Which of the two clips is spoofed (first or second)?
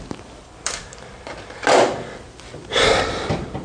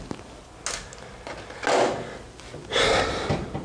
first